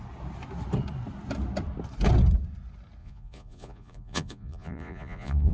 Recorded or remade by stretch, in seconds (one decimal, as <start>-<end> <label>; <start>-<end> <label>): 0.0-3.0 recorded; 3.0-5.5 remade